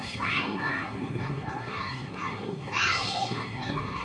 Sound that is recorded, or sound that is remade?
remade